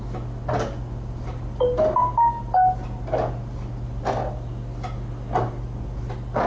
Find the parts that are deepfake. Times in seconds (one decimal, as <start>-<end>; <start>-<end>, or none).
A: none